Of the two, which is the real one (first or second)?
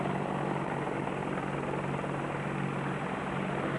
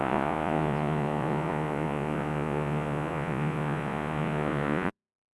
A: first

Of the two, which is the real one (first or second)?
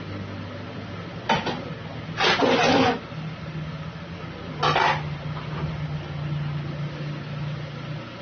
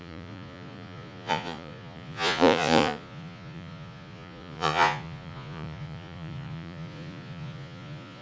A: first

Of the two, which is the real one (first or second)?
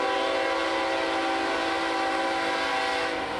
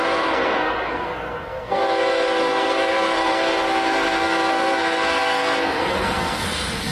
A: first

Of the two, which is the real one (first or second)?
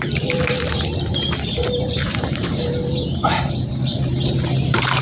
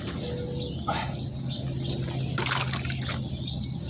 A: second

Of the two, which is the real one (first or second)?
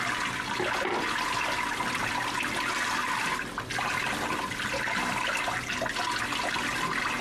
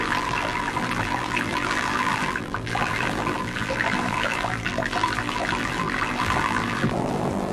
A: first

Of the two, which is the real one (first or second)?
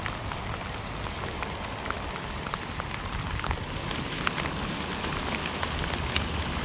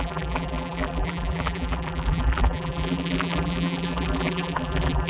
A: first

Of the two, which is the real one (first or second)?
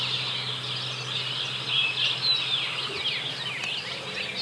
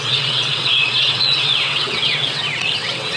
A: first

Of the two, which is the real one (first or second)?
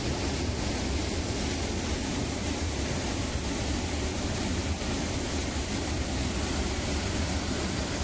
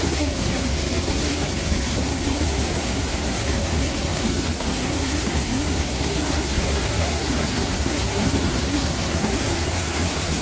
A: first